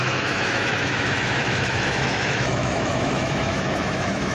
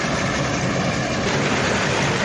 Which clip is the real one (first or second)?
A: second